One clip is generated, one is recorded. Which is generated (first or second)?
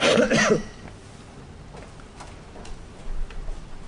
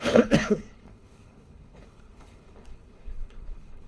second